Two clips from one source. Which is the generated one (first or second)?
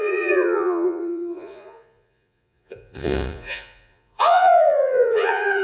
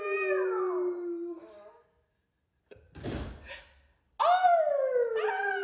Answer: first